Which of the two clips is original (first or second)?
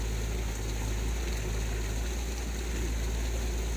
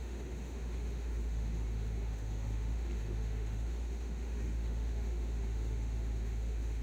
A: first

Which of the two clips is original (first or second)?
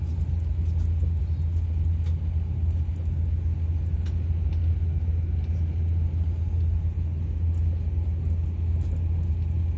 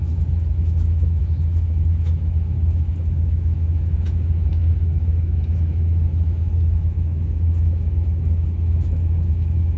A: first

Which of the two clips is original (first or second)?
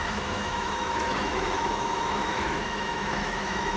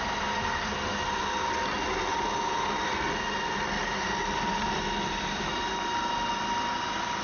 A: second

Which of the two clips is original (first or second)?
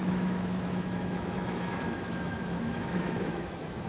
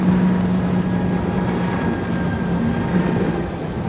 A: second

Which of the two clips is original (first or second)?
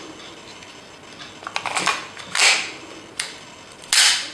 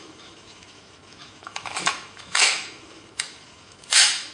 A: first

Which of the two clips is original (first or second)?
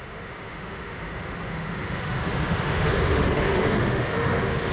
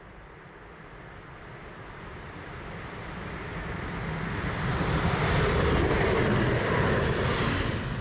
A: second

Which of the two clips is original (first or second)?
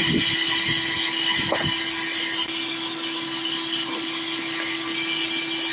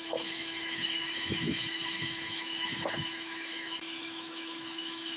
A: first